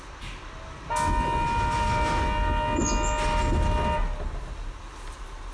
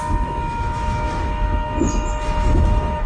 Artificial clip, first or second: second